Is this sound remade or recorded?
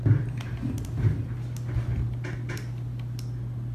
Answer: recorded